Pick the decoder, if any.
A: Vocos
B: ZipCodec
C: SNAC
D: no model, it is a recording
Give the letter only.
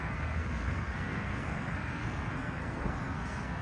C